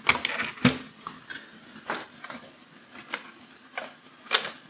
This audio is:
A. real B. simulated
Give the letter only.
A